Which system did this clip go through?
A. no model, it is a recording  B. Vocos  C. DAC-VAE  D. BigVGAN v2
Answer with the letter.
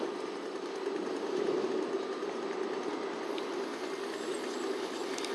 A